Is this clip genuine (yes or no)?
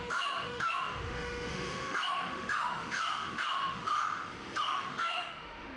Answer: no